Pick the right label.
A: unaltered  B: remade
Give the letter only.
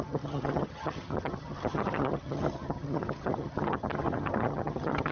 B